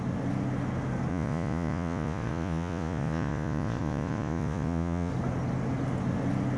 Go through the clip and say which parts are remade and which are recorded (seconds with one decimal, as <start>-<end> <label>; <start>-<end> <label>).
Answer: 0.0-1.1 recorded; 1.1-5.1 remade; 5.1-6.6 recorded